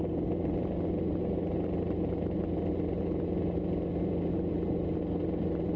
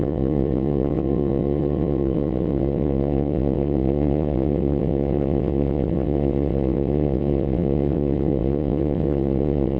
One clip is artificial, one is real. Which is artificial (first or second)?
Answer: second